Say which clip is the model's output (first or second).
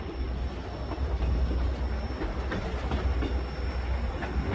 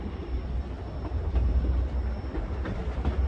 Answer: second